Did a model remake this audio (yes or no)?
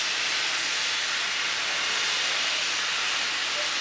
no